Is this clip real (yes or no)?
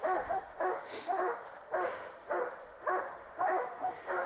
no